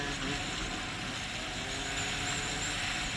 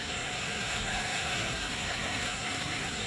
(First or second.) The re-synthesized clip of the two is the second